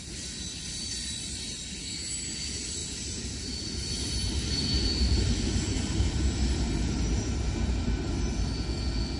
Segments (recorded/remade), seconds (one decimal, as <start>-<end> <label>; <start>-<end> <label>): 0.0-2.8 recorded; 2.8-6.1 remade; 6.1-9.2 recorded